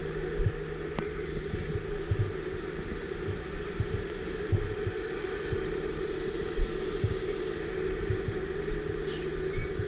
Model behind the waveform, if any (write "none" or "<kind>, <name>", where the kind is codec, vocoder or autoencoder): none